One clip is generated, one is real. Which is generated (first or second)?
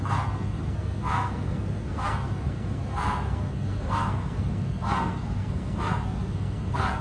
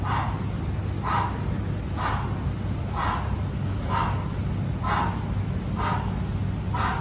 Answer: first